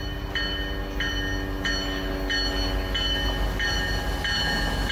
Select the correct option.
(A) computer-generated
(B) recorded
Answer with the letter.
B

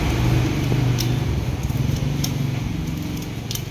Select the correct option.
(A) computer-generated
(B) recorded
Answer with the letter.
B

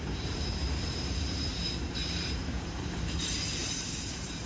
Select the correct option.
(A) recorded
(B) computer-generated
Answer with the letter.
B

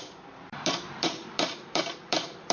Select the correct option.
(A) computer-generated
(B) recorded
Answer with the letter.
A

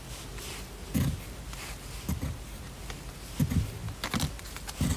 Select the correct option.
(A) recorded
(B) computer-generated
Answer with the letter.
A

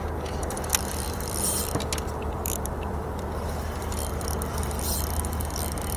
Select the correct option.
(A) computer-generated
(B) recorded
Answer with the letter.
A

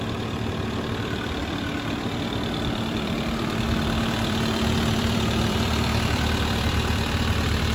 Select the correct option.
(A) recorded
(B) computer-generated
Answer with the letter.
B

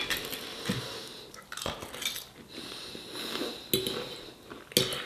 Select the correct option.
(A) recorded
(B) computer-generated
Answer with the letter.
A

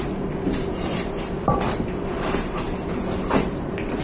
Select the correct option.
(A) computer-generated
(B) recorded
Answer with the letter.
A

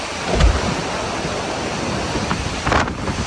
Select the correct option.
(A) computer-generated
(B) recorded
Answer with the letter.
A